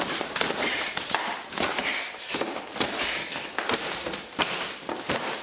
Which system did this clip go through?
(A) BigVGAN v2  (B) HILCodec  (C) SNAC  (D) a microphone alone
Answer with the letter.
A